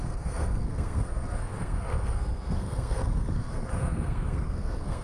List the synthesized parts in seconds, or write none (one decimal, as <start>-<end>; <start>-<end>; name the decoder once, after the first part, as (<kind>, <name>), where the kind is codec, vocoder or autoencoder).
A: 0.0-5.0 (codec, SNAC)